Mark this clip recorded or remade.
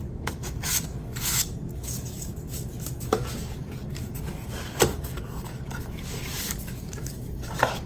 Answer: remade